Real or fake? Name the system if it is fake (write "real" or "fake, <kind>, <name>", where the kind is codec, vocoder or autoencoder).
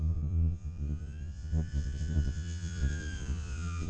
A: fake, vocoder, Vocos